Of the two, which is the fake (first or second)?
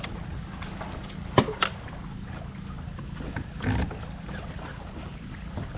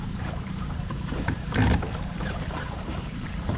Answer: second